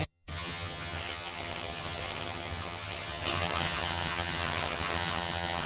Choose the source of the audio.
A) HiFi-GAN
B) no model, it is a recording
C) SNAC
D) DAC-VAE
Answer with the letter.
A